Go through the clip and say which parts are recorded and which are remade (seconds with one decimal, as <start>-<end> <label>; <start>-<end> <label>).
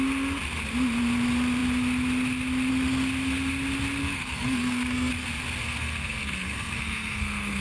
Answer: 0.0-4.0 recorded; 4.0-5.1 remade; 5.1-5.6 recorded; 5.6-7.6 remade